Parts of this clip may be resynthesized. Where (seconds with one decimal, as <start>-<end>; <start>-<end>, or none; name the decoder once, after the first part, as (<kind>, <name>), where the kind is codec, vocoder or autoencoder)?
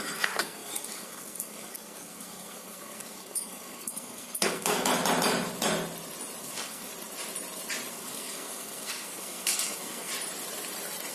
0.0-4.9 (codec, SNAC); 6.4-6.9; 7.9-10.1